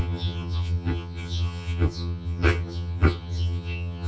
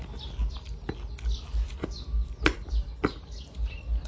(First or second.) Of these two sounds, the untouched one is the second